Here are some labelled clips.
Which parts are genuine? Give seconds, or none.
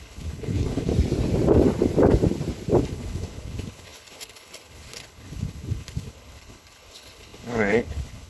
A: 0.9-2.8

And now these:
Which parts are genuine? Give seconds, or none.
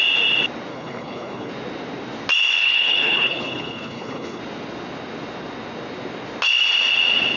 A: 0.0-0.7; 1.5-2.6; 4.4-7.4